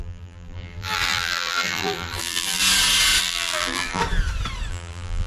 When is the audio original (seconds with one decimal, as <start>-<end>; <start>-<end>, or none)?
2.6-3.2; 4.0-4.7